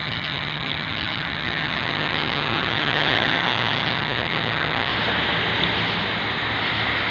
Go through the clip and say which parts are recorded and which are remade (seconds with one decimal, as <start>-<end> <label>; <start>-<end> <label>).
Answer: 0.0-4.9 remade; 4.9-7.1 recorded